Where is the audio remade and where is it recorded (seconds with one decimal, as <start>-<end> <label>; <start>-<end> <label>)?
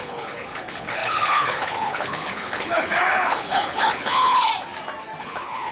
0.0-4.5 remade; 4.5-5.2 recorded; 5.2-5.7 remade